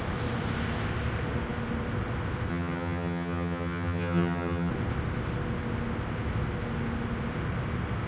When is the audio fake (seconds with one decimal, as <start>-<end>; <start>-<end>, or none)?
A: 2.5-4.7